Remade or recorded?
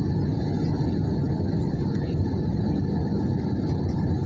recorded